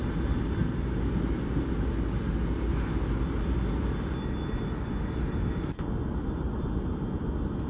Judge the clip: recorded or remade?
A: recorded